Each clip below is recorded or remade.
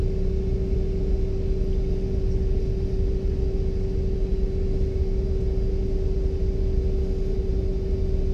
recorded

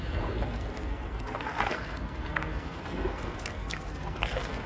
remade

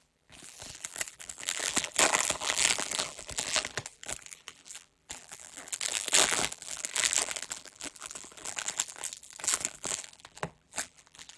remade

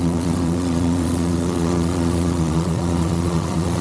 remade